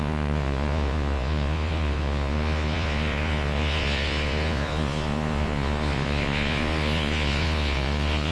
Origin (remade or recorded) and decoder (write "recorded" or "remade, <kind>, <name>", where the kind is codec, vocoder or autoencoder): remade, vocoder, Vocos